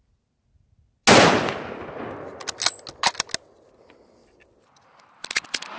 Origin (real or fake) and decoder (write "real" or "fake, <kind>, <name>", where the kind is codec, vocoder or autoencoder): real